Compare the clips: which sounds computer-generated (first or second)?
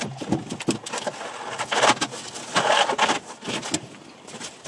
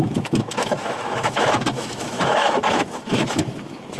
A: second